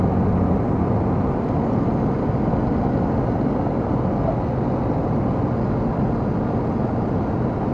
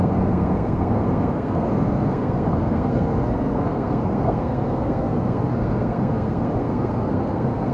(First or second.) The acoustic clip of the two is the first